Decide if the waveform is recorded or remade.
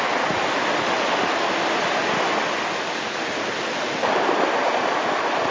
recorded